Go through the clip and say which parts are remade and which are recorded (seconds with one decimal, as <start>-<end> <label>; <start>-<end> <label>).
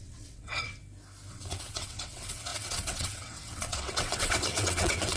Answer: 0.0-0.8 remade; 0.8-1.3 recorded; 1.3-5.2 remade